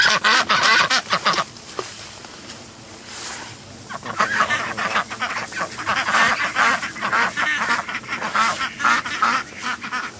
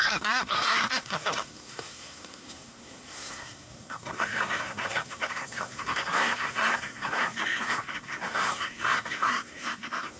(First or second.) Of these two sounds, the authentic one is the first